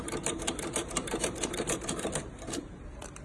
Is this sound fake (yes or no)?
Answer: yes